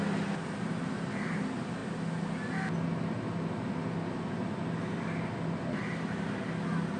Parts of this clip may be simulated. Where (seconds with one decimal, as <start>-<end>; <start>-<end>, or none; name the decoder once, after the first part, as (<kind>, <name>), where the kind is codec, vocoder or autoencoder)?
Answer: none